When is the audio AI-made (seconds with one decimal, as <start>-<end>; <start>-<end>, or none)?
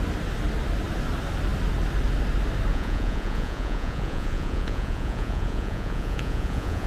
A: 2.7-6.9